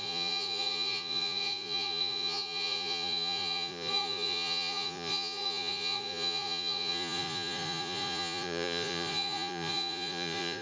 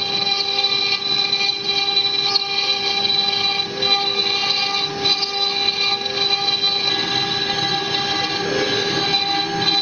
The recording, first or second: second